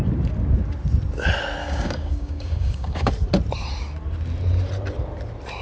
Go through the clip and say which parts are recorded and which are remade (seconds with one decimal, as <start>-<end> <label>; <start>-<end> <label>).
0.0-1.6 recorded; 1.6-3.1 remade; 3.1-5.6 recorded